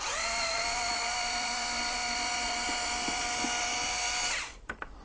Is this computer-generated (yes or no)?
yes